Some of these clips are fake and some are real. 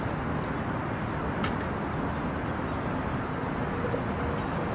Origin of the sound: real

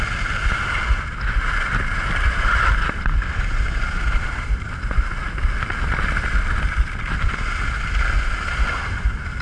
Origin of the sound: real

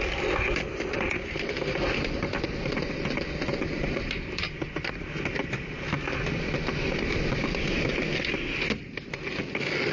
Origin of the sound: real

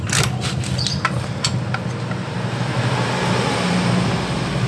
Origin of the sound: real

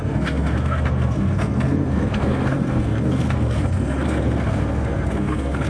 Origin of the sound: fake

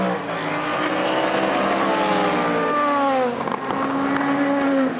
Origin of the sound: real